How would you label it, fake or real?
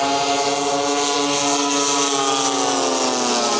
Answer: real